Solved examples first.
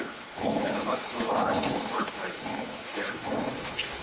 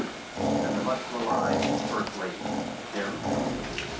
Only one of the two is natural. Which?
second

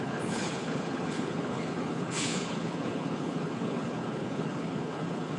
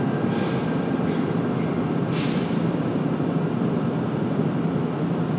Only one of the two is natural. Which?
second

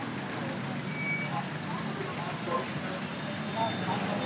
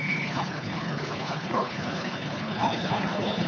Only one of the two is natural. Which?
first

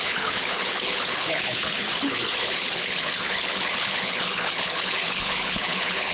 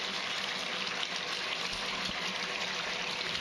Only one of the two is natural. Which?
second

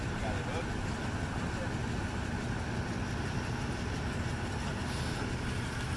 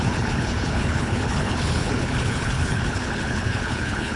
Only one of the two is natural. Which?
first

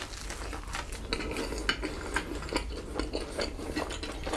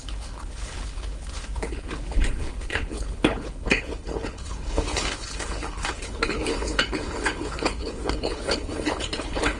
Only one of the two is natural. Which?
first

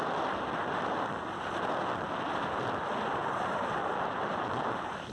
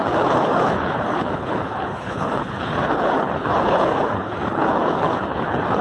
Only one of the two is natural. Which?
first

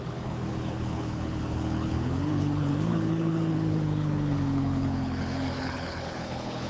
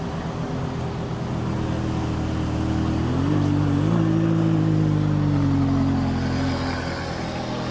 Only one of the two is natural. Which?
second